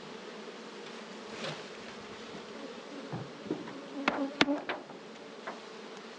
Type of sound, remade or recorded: remade